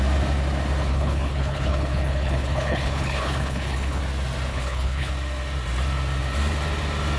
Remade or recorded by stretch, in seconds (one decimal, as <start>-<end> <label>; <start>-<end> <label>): 0.0-0.9 recorded; 0.9-4.0 remade; 4.0-4.5 recorded; 4.5-5.1 remade; 5.1-7.2 recorded